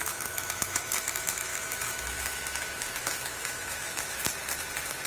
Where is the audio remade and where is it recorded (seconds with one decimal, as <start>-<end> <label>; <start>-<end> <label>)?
0.0-4.2 remade; 4.2-5.1 recorded